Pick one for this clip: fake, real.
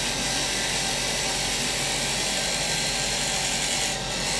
real